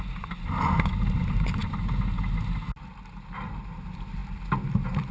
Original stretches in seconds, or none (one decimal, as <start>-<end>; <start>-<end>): 0.0-5.1